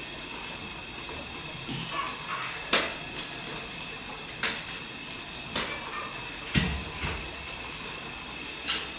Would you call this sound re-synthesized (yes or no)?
no